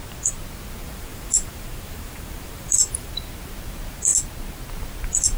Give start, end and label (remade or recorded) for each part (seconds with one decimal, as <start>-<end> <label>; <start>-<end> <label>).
0.0-0.8 recorded; 0.8-3.1 remade; 3.1-5.4 recorded